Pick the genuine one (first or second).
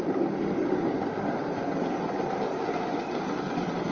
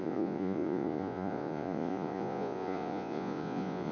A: first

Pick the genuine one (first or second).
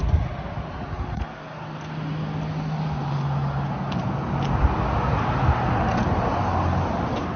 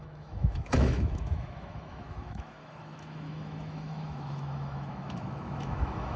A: first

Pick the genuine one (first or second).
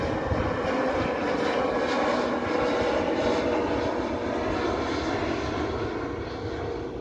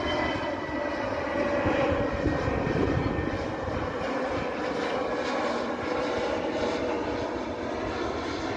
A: first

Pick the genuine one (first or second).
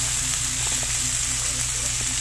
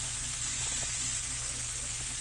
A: first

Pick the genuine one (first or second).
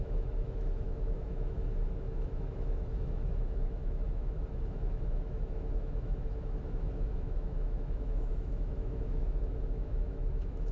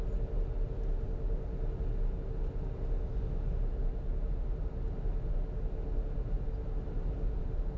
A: second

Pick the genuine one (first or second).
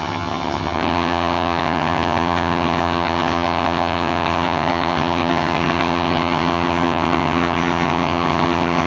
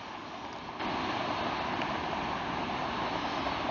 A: second